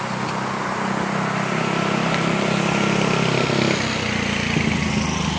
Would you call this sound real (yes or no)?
yes